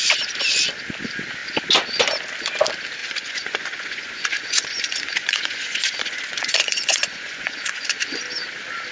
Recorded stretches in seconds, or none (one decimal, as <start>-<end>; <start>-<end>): 0.0-3.0; 8.2-8.9